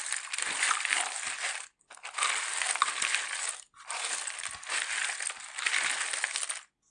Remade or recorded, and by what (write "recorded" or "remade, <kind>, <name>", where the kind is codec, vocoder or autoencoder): recorded